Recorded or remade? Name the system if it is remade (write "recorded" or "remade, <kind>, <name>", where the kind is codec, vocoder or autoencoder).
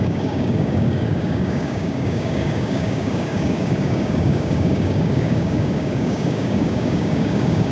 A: remade, codec, DAC